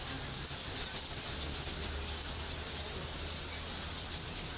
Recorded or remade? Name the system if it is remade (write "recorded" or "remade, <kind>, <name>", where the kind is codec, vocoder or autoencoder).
recorded